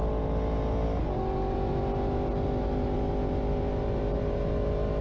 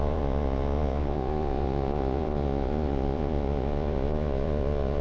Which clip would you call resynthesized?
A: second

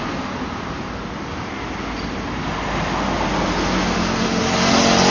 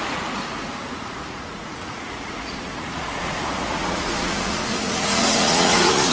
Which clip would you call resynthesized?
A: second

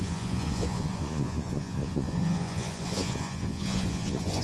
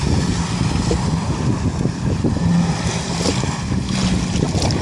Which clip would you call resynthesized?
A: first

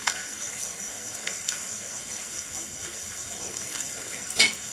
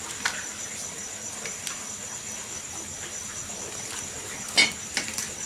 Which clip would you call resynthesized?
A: first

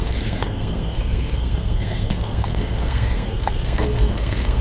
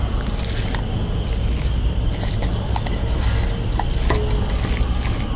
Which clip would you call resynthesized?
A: first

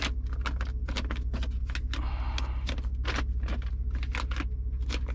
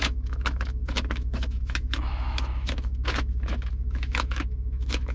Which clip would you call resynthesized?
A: second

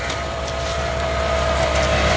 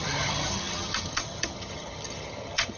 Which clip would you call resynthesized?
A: second